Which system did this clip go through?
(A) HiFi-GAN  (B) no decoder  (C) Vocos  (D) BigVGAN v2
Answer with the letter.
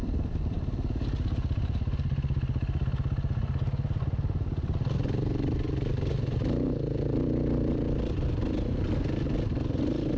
B